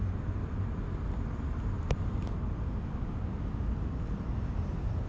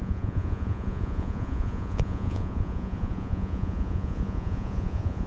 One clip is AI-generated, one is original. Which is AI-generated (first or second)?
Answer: second